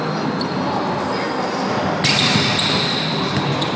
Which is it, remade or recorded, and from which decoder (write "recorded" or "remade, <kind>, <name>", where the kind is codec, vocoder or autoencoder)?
recorded